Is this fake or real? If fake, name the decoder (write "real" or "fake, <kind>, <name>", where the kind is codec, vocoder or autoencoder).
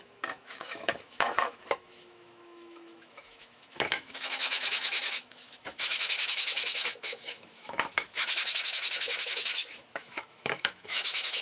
fake, autoencoder, DAC-VAE